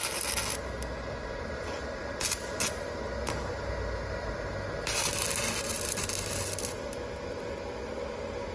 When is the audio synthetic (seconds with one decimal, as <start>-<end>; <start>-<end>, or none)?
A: none